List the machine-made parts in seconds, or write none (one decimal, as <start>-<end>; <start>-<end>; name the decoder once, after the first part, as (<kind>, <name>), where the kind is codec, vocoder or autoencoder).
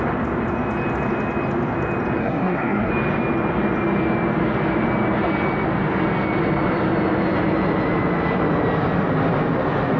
2.2-2.9 (codec, SNAC)